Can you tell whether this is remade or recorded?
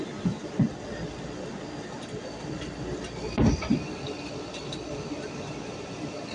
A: recorded